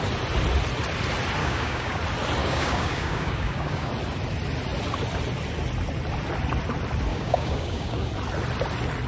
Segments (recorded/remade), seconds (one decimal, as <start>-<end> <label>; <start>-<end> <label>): 0.0-1.4 recorded; 1.4-2.0 remade; 2.0-2.4 recorded; 2.4-3.9 remade; 3.9-7.1 recorded; 7.1-8.1 remade; 8.1-9.1 recorded